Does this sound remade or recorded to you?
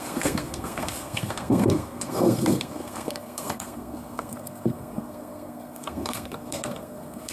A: remade